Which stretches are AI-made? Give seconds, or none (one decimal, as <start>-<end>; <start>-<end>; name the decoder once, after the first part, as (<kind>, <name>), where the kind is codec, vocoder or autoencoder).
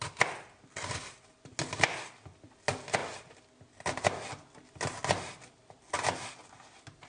none